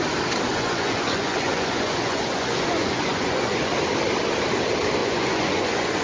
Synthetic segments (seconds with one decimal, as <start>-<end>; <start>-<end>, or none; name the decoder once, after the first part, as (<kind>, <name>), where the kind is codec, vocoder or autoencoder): 0.5-3.7 (vocoder, Vocos); 5.0-6.0